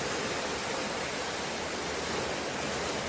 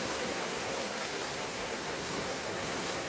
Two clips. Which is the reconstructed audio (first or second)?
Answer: second